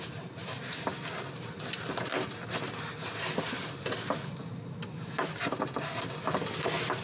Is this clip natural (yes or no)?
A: yes